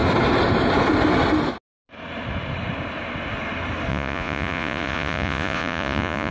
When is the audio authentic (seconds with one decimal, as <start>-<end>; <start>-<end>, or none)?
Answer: 0.0-3.9